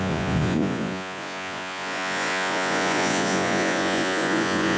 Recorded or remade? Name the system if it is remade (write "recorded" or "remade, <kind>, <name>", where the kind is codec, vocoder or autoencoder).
remade, vocoder, Vocos